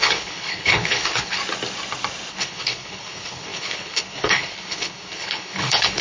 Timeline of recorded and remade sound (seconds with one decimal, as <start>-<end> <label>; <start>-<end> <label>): 0.0-1.4 remade; 1.4-2.3 recorded; 2.3-6.0 remade